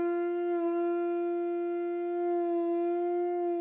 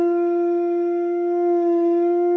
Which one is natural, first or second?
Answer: first